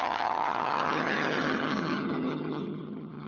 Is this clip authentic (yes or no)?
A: no